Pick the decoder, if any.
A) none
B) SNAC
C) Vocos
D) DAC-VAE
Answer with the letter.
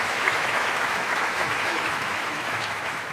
D